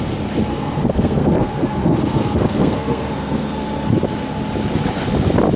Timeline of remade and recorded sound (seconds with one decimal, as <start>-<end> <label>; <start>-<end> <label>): 0.0-0.5 recorded; 0.5-3.9 remade; 3.9-5.6 recorded